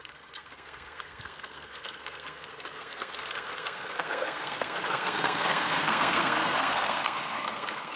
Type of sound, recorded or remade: remade